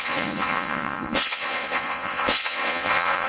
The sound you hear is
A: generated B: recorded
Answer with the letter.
A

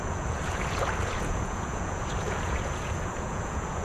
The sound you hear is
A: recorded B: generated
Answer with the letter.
B